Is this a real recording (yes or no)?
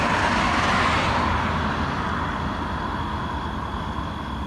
yes